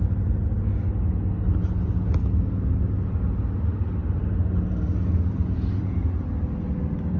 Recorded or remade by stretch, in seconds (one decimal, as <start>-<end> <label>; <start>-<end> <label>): 0.0-2.2 recorded; 2.2-2.8 remade; 2.8-7.2 recorded